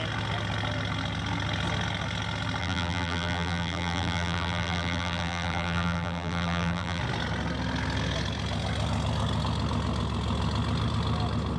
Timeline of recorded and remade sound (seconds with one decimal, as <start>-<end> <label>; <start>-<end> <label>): 0.0-2.6 recorded; 2.6-7.0 remade; 7.0-11.6 recorded